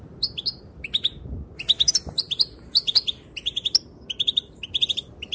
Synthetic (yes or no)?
no